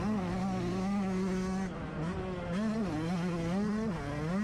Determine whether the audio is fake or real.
real